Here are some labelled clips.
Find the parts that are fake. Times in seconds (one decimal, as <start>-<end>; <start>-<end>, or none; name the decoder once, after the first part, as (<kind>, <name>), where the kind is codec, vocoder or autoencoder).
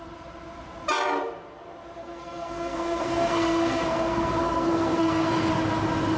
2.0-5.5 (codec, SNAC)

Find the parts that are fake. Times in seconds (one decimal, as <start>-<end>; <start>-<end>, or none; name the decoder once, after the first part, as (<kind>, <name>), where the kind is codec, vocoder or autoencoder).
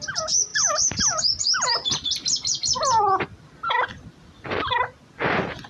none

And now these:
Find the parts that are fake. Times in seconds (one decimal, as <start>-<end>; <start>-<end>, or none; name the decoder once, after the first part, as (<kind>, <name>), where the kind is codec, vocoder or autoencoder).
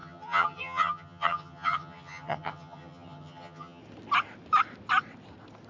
0.0-3.8 (vocoder, HiFi-GAN)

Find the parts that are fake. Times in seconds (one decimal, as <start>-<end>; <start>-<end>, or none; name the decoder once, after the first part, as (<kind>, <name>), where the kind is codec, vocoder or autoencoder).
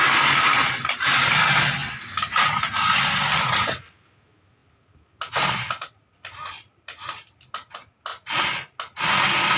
none